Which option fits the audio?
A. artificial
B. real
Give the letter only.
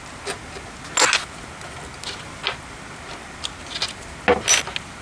B